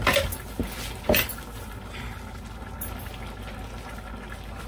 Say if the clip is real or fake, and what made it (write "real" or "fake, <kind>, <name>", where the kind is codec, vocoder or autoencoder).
real